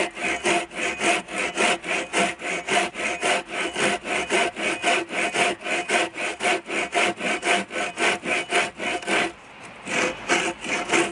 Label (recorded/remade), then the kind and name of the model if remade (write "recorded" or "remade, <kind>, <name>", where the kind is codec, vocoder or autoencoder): recorded